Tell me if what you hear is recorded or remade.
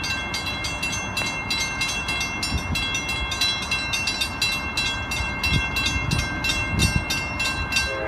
recorded